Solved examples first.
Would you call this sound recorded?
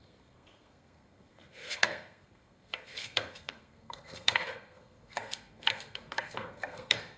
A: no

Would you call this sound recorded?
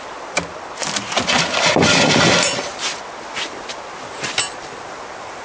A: yes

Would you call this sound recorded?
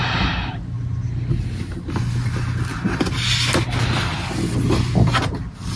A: yes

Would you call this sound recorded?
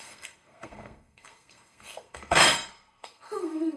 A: no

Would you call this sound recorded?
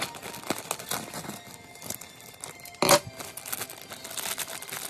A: yes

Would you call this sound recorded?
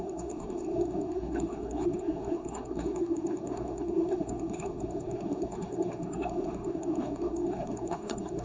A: no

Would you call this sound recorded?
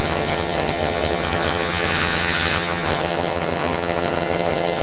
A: no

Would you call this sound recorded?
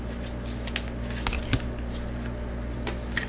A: yes